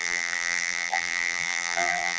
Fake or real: fake